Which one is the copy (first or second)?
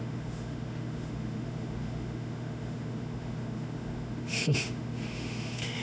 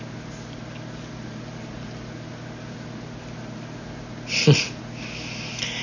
first